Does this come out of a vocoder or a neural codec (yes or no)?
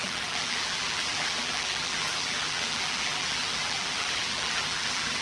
yes